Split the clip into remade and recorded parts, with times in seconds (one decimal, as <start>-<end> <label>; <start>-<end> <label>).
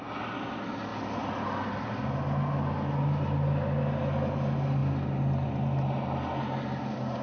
0.0-7.2 recorded